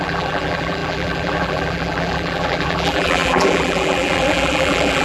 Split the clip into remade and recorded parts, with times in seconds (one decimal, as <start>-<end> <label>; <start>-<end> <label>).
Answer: 0.0-5.0 remade